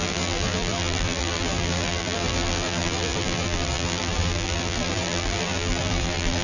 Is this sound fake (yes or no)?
yes